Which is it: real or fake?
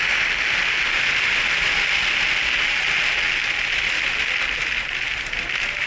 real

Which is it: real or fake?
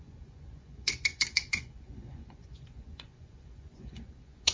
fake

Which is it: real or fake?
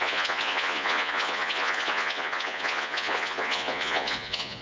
fake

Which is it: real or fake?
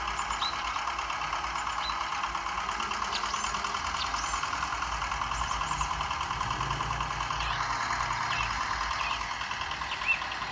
real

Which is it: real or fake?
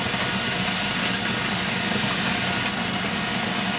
real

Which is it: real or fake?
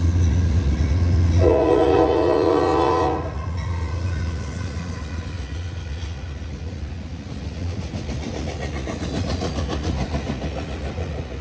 fake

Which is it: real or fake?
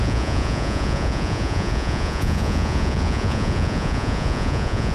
fake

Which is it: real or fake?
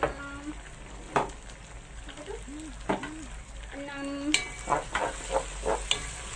real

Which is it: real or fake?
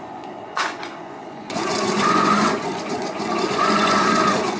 fake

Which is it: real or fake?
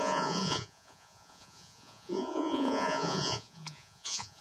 fake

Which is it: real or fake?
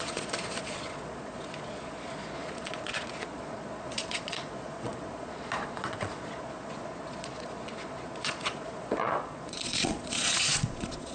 fake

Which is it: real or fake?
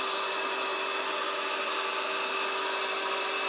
real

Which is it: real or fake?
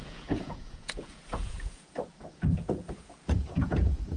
fake